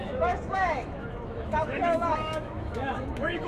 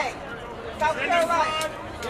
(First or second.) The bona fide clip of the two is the second